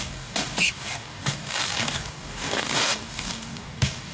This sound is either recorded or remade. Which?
remade